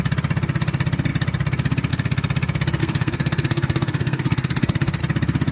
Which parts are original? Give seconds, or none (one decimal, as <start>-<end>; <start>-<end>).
0.0-2.8; 5.0-5.5